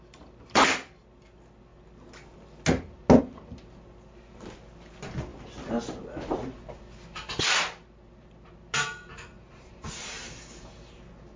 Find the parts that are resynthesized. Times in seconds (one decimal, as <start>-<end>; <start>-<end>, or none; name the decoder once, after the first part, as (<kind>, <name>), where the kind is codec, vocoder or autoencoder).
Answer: 9.1-10.3 (vocoder, BigVGAN v2)